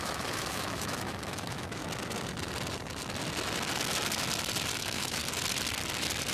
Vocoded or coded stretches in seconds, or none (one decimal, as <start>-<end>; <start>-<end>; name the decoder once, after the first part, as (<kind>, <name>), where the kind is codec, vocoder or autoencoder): 0.0-1.8 (autoencoder, DAC-VAE); 4.8-5.2